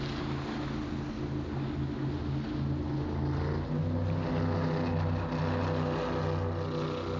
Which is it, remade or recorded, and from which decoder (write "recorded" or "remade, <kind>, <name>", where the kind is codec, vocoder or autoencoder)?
recorded